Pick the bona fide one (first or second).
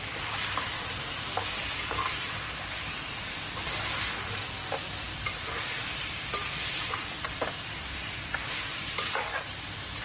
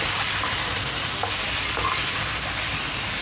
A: second